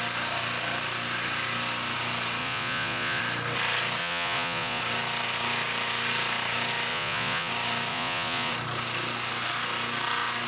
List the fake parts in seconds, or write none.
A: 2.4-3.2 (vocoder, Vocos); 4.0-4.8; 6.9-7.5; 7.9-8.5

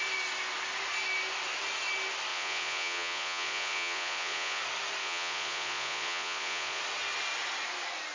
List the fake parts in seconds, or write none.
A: 2.3-4.6 (vocoder, Vocos); 5.0-6.8

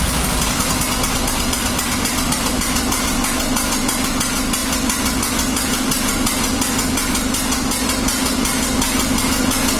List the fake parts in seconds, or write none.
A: none

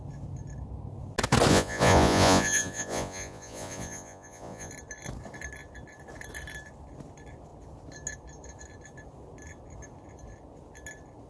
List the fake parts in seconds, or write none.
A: 1.5-4.7 (vocoder, Vocos)